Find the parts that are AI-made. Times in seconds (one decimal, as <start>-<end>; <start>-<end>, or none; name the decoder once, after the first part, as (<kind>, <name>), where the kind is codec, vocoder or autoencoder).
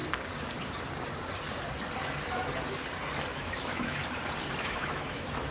3.3-4.0 (autoencoder, DAC-VAE); 4.6-5.5